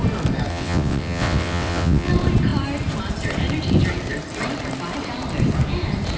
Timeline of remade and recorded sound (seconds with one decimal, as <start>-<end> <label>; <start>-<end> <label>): 0.0-0.5 recorded; 0.5-2.1 remade; 2.1-6.2 recorded